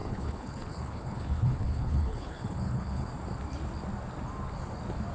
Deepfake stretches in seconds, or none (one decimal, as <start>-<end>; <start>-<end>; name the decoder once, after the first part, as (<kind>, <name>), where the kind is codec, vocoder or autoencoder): 0.0-3.1 (codec, HILCodec)